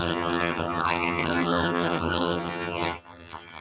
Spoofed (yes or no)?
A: yes